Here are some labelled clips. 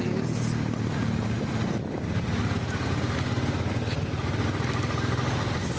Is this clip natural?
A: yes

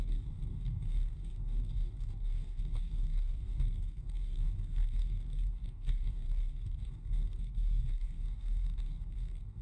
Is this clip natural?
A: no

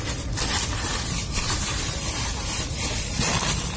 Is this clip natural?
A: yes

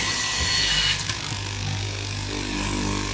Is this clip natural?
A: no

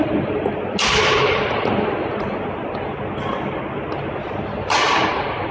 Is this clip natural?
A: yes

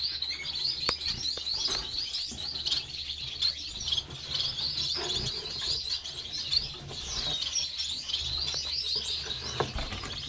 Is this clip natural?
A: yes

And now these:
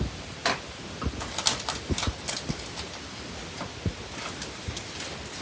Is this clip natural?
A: yes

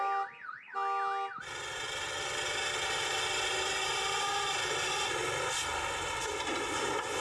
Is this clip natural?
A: yes